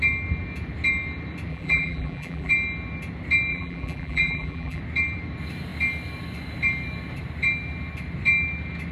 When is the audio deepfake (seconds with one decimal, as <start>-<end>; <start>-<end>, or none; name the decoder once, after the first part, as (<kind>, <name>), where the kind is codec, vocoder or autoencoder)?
1.5-2.5 (vocoder, BigVGAN v2); 3.5-4.8